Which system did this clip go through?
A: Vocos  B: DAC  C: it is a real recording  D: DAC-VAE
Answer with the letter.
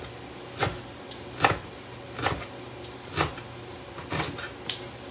C